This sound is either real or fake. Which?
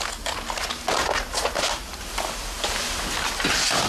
real